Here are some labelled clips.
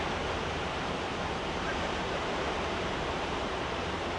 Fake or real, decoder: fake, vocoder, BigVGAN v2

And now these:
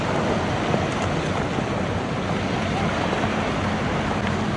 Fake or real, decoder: real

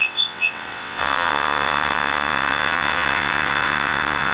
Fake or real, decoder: fake, vocoder, WaveNeXt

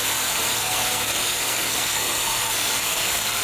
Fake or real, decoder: fake, codec, SNAC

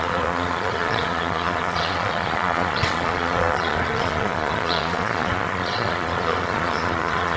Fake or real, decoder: fake, vocoder, Vocos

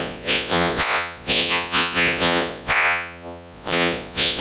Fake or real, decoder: fake, vocoder, Vocos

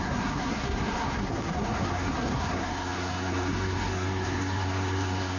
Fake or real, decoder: fake, codec, SNAC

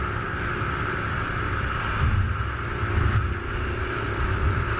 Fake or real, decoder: real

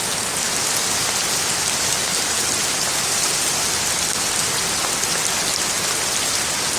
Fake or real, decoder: real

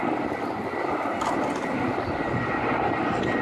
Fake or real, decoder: real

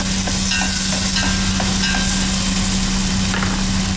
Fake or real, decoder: real